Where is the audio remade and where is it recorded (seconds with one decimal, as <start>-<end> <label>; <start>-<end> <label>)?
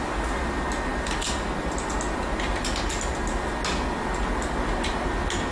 0.0-5.5 recorded